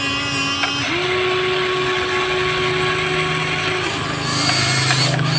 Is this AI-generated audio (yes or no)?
no